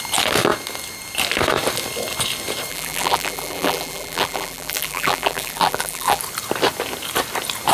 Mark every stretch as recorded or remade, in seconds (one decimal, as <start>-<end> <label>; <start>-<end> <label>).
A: 0.0-2.7 recorded; 2.7-6.2 remade; 6.2-7.7 recorded